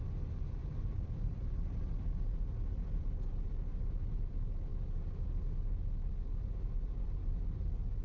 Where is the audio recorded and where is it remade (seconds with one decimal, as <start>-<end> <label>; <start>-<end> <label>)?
0.0-0.6 recorded; 0.6-1.9 remade; 1.9-3.7 recorded; 3.7-4.3 remade; 4.3-8.0 recorded